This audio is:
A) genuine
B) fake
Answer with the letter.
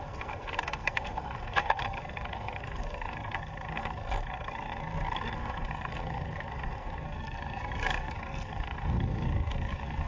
B